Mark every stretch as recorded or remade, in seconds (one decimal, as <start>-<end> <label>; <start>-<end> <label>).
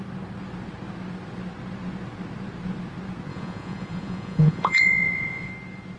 0.0-3.3 recorded; 3.3-5.5 remade; 5.5-6.0 recorded